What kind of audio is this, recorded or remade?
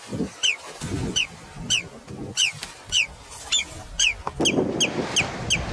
recorded